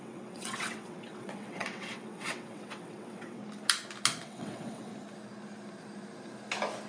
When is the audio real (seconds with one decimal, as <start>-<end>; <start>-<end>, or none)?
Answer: 3.4-4.2; 4.9-6.9